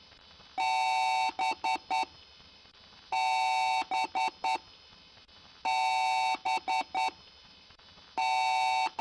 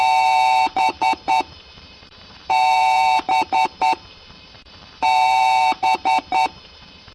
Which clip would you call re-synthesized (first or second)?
second